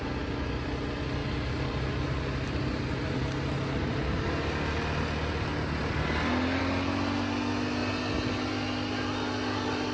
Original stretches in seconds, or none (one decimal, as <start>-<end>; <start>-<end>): 0.0-9.9

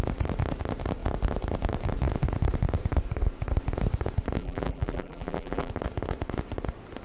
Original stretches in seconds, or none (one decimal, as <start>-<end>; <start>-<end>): 0.0-4.4; 5.7-7.0

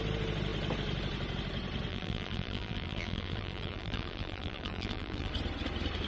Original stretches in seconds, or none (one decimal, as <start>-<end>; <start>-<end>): 0.0-1.9; 5.3-6.1

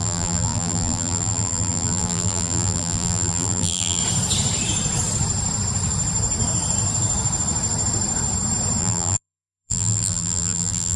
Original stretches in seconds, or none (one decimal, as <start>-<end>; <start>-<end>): 4.0-8.8

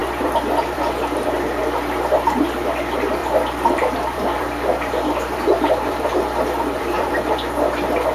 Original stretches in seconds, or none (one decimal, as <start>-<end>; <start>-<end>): 1.6-3.2; 7.2-8.1

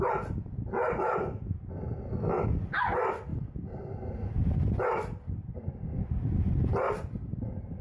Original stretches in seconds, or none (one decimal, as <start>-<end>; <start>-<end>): 0.0-7.8